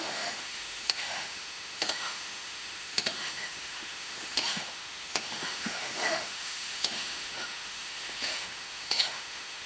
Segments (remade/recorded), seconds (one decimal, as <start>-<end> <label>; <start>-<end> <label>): 0.0-9.7 remade